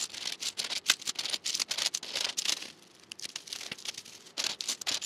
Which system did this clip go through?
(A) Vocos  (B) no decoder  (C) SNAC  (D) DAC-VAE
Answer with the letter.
B